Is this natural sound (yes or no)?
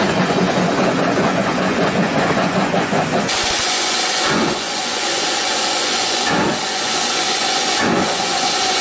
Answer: no